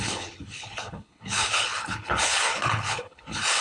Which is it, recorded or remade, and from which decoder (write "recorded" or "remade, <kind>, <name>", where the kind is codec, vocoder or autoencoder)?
remade, codec, HILCodec